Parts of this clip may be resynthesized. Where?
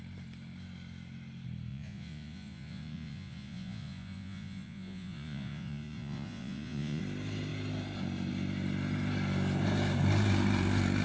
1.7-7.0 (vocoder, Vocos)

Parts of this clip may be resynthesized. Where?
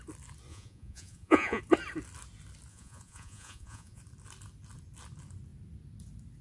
0.5-1.6 (vocoder, Vocos); 2.7-4.0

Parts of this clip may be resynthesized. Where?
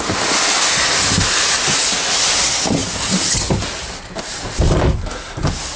none